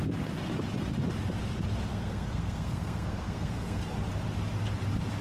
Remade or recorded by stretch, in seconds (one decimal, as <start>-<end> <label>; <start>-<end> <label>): 0.0-1.9 recorded; 1.9-3.8 remade; 3.8-5.2 recorded